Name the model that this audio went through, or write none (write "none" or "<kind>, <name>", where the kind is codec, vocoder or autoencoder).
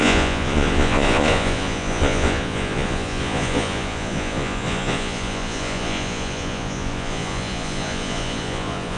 vocoder, Vocos